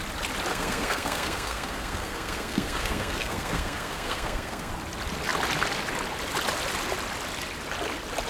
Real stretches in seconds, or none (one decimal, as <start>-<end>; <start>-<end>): 0.0-0.5; 4.7-8.3